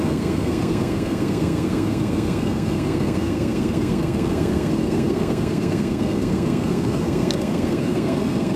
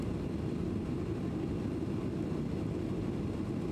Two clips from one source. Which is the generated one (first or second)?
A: first